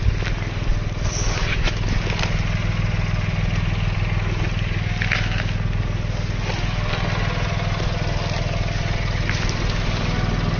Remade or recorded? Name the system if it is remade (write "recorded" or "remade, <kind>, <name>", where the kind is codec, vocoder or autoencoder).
recorded